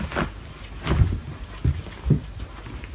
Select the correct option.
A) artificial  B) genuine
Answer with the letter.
B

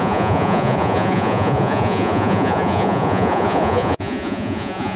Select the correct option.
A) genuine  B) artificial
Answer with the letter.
B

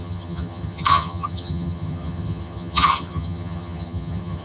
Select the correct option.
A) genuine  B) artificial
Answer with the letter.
B